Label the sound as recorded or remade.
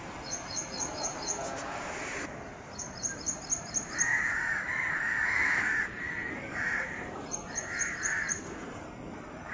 remade